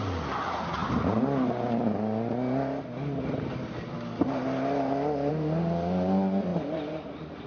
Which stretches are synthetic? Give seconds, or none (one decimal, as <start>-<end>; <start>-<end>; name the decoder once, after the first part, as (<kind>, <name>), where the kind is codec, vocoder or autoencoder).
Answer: 6.5-7.5 (vocoder, BigVGAN v2)